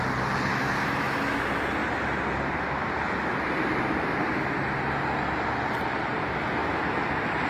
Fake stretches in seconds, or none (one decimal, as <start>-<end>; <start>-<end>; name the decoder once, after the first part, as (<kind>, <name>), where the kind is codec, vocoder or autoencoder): 0.5-1.4 (autoencoder, DAC-VAE); 6.6-7.1